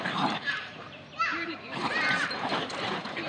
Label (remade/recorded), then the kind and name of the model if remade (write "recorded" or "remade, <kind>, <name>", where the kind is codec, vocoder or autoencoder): remade, vocoder, BigVGAN v2